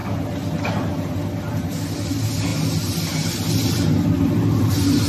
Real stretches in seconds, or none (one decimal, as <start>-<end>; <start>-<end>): 0.0-5.1